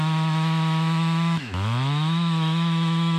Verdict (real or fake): fake